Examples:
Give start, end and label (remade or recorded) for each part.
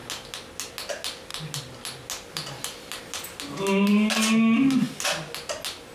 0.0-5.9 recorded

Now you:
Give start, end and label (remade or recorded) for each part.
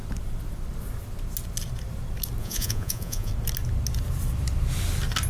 0.0-2.4 recorded; 2.4-3.3 remade; 3.3-5.3 recorded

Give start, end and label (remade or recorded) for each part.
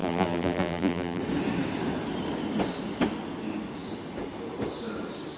0.0-1.2 remade; 1.2-5.4 recorded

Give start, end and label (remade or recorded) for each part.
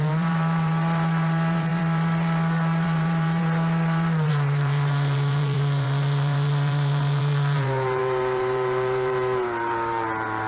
0.0-10.5 remade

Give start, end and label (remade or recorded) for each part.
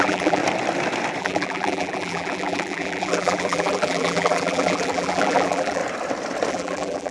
0.0-0.4 remade; 0.4-1.2 recorded; 1.2-5.8 remade; 5.8-6.5 recorded; 6.5-7.1 remade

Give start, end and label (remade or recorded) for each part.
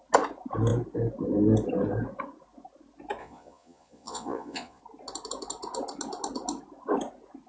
0.0-3.2 recorded; 3.2-4.8 remade; 4.8-7.5 recorded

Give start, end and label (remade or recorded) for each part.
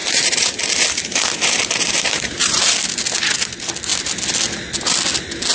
0.0-2.7 remade; 2.7-5.5 recorded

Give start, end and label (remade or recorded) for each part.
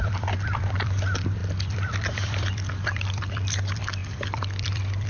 0.0-5.1 remade